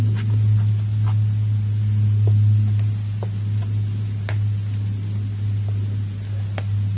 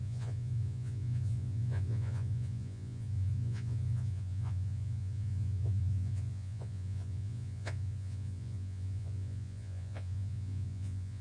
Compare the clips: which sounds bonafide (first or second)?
first